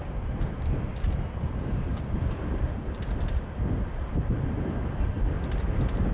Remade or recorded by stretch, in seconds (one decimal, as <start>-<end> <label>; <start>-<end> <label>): 0.0-6.1 recorded